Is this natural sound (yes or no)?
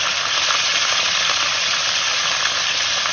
yes